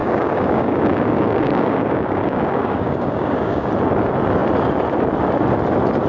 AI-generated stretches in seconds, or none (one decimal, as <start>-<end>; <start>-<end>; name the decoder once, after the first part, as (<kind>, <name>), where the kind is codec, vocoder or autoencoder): 0.0-3.7 (codec, DAC)